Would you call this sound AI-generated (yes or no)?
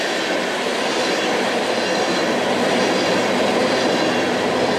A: no